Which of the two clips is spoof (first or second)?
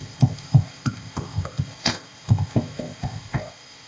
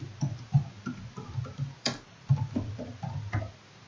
first